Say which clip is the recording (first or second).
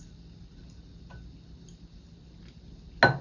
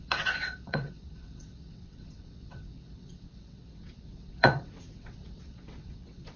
first